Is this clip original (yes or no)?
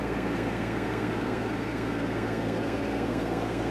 no